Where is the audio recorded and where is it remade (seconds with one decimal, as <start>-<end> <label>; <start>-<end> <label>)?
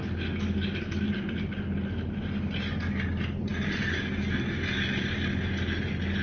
0.0-6.2 recorded